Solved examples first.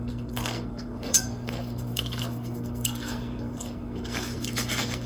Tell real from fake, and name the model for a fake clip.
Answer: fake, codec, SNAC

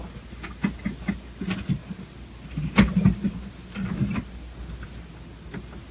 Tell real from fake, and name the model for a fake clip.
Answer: real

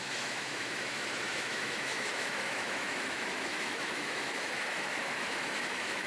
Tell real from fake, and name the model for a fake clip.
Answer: fake, autoencoder, DAC-VAE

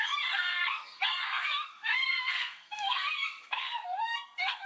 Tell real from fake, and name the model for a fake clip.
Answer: fake, codec, SNAC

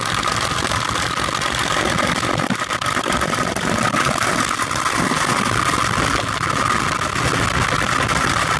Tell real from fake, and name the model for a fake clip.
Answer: real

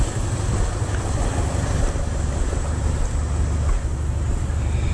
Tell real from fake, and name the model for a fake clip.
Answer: real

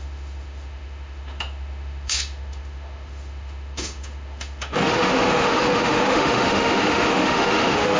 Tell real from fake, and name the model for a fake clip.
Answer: fake, autoencoder, DAC-VAE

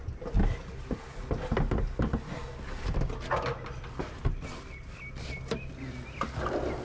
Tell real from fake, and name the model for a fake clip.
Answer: real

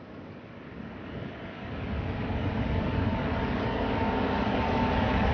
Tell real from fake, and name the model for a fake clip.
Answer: fake, codec, DAC